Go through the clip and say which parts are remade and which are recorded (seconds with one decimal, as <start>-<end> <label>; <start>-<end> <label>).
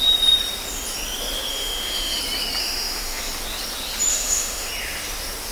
0.0-1.5 recorded; 1.5-2.2 remade; 2.2-2.6 recorded; 2.6-3.2 remade; 3.2-4.1 recorded; 4.1-4.7 remade; 4.7-5.5 recorded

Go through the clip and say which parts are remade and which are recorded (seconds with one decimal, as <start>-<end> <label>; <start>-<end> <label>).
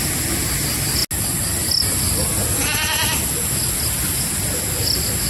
0.0-5.3 recorded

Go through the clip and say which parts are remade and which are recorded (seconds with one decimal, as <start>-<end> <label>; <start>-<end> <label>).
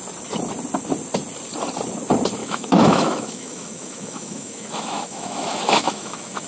0.0-2.4 recorded; 2.4-6.5 remade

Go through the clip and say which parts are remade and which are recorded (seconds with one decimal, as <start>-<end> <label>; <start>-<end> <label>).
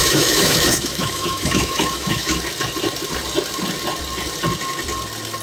0.0-2.4 remade; 2.4-5.4 recorded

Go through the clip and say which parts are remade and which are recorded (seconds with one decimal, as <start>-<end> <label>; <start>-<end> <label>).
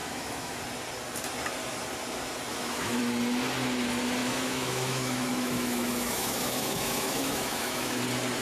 0.0-0.6 remade; 0.6-2.5 recorded; 2.5-3.0 remade; 3.0-4.2 recorded; 4.2-8.0 remade; 8.0-8.4 recorded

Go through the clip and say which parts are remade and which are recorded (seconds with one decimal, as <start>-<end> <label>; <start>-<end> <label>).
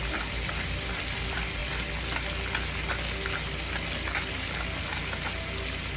0.0-6.0 recorded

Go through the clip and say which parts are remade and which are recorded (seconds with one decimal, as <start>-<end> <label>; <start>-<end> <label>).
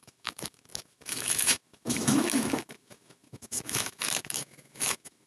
0.0-5.3 remade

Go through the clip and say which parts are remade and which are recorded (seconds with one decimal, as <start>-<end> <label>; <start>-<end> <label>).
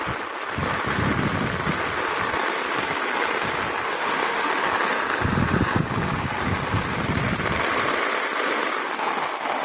0.0-3.9 recorded; 3.9-4.5 remade; 4.5-9.6 recorded